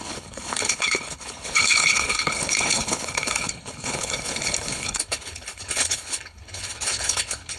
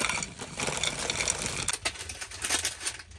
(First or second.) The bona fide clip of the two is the second